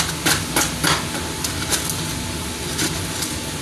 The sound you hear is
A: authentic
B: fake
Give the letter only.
A